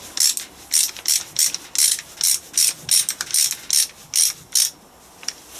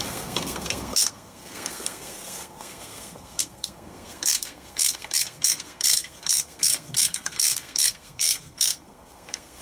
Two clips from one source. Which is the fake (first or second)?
second